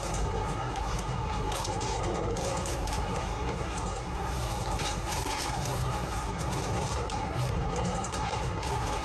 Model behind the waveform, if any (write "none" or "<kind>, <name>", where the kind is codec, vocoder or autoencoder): codec, SNAC